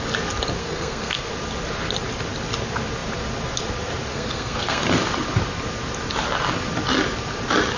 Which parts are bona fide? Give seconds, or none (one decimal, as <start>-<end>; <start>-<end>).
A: 0.0-0.6; 1.3-4.1; 4.8-7.8